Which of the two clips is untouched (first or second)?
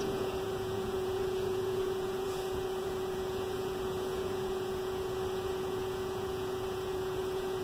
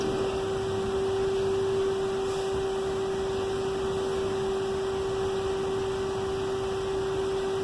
second